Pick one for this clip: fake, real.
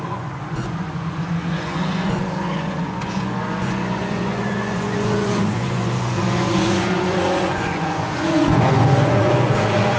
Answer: fake